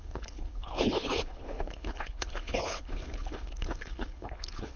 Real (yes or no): no